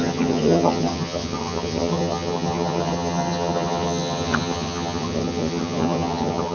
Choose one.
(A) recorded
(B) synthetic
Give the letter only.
B